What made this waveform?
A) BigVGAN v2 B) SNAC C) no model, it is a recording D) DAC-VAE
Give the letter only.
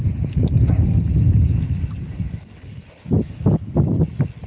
C